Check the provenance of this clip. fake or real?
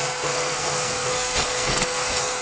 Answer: fake